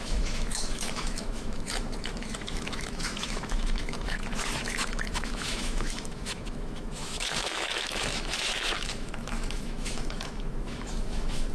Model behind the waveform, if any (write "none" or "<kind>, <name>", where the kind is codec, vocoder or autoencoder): autoencoder, DAC-VAE